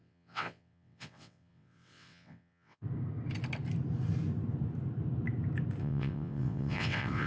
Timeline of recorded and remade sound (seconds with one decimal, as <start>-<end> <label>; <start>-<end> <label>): 0.0-2.8 remade; 2.8-5.8 recorded; 5.8-7.3 remade